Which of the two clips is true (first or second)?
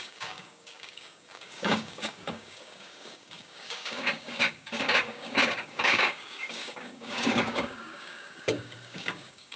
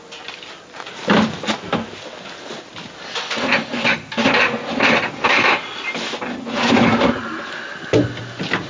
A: second